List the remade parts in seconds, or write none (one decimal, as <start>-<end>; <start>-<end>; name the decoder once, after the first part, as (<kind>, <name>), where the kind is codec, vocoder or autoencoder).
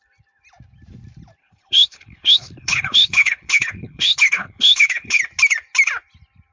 1.4-5.2 (codec, HILCodec)